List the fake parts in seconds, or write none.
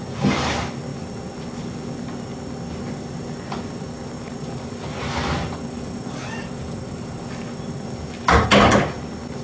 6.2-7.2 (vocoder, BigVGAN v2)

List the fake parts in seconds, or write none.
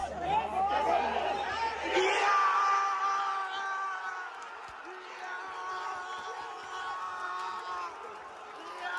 7.0-7.6 (codec, SNAC)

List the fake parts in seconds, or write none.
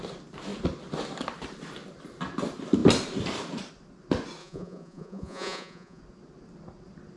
4.4-6.0 (vocoder, Vocos)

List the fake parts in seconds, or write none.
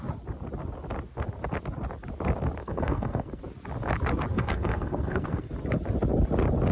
2.6-3.4 (codec, SNAC); 4.3-5.5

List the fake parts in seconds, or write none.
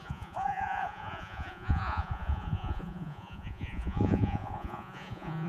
0.0-5.5 (vocoder, Vocos)